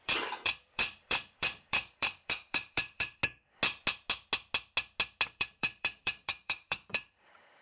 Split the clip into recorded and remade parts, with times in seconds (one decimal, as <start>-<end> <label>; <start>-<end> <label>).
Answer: 0.0-3.2 remade; 3.2-5.4 recorded; 5.4-7.6 remade